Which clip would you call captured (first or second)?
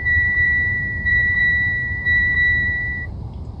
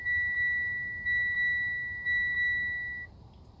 second